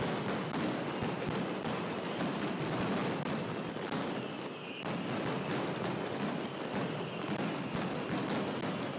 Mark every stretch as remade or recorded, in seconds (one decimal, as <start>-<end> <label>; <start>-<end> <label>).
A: 0.0-9.0 recorded

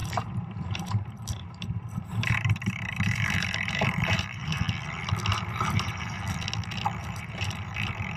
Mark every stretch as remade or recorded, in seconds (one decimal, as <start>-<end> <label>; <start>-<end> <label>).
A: 0.0-4.6 remade; 4.6-5.3 recorded; 5.3-6.2 remade; 6.2-7.0 recorded; 7.0-7.7 remade; 7.7-8.2 recorded

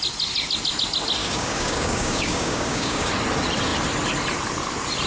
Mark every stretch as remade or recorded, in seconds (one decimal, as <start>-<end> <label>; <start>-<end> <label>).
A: 0.0-1.2 recorded; 1.2-3.1 remade; 3.1-5.1 recorded

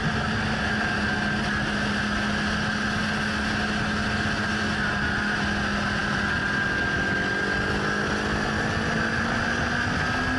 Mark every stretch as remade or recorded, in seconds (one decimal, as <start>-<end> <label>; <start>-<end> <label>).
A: 0.0-10.4 recorded

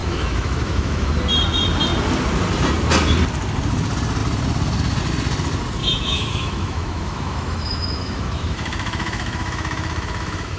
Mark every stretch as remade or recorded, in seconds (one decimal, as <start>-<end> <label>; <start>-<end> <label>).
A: 0.0-1.1 remade; 1.1-5.8 recorded; 5.8-10.6 remade

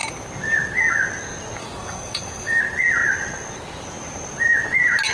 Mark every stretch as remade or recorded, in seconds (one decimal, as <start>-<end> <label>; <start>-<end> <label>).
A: 0.0-1.6 recorded; 1.6-2.6 remade; 2.6-5.1 recorded

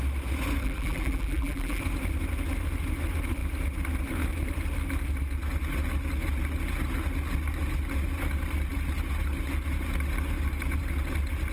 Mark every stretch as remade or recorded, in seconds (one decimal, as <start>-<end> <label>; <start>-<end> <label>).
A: 0.0-0.6 recorded; 0.6-1.8 remade; 1.8-11.5 recorded

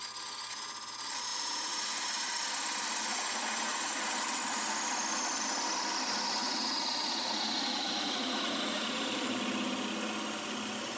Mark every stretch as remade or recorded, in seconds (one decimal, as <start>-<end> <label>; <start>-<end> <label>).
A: 0.0-1.3 recorded; 1.3-2.0 remade; 2.0-3.1 recorded; 3.1-4.0 remade; 4.0-6.4 recorded; 6.4-9.1 remade; 9.1-11.0 recorded